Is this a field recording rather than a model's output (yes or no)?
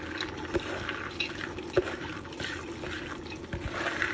yes